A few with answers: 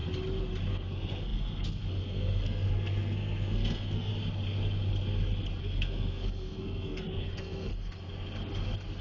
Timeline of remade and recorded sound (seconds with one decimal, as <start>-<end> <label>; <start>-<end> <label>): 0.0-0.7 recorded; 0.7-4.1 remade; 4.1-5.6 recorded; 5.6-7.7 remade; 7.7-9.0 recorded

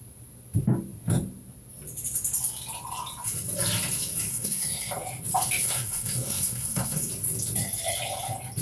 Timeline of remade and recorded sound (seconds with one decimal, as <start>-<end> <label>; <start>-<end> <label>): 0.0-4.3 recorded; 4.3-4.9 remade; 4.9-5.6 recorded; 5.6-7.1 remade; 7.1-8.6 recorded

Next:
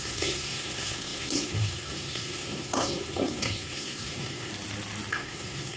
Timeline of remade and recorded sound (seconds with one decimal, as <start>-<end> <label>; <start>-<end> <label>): 0.0-4.5 remade; 4.5-5.1 recorded; 5.1-5.8 remade

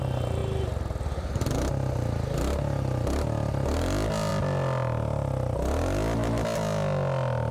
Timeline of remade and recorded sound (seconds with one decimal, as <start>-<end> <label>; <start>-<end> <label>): 0.0-7.5 recorded

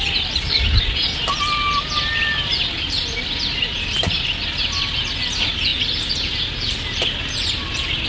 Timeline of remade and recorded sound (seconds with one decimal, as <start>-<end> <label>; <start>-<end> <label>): 0.0-8.1 recorded

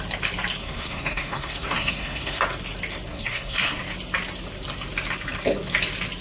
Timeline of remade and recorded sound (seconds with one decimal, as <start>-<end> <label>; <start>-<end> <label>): 0.0-0.6 recorded; 0.6-2.4 remade; 2.4-3.1 recorded; 3.1-3.8 remade; 3.8-6.2 recorded

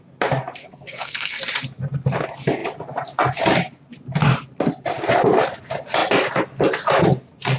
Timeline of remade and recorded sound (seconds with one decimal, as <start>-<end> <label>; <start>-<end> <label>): 0.0-0.6 recorded; 0.6-1.4 remade; 1.4-7.6 recorded

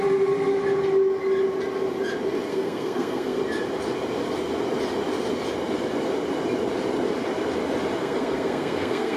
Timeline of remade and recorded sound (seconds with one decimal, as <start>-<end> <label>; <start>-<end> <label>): 0.0-2.5 recorded; 2.5-3.4 remade; 3.4-8.0 recorded; 8.0-9.2 remade